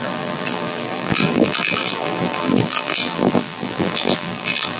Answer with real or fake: fake